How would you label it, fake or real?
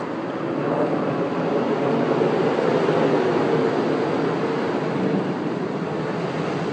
real